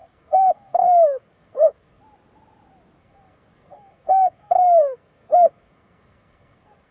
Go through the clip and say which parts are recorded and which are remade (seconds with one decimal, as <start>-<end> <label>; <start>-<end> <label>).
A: 0.0-2.0 remade; 2.0-3.0 recorded; 3.0-6.9 remade